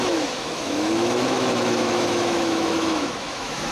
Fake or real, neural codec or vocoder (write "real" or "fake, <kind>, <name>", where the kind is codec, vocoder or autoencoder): fake, autoencoder, DAC-VAE